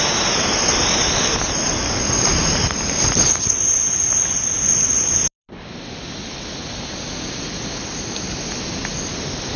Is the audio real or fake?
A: real